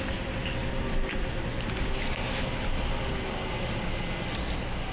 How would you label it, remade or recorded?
recorded